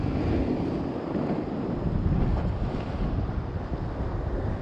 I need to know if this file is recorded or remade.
recorded